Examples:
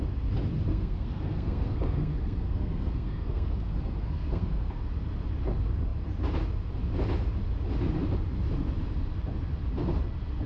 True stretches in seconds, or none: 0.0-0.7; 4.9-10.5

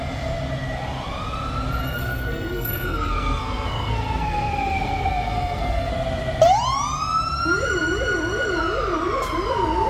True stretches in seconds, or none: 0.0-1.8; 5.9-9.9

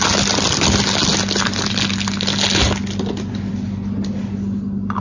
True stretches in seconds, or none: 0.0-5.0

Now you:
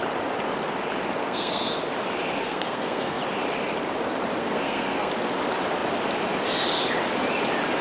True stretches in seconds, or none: 0.0-1.2; 1.8-2.4; 3.2-4.4; 5.1-7.8